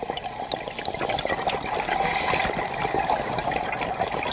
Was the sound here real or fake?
real